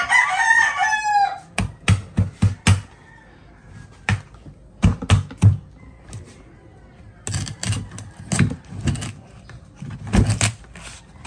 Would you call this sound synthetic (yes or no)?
no